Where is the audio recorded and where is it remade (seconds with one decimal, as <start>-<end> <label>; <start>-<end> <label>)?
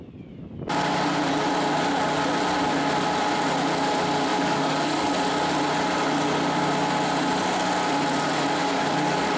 0.0-4.3 recorded; 4.3-5.1 remade; 5.1-8.6 recorded; 8.6-9.4 remade